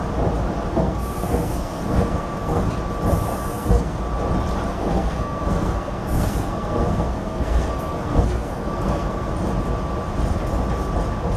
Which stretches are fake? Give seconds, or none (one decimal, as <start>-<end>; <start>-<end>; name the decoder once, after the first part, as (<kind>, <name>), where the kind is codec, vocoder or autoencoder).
0.7-2.7 (codec, SNAC); 3.3-4.0; 4.7-9.3